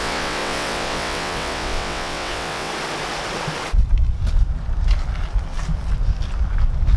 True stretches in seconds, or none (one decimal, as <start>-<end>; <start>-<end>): 2.7-7.0